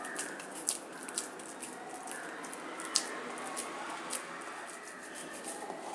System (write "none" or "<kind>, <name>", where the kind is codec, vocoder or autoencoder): none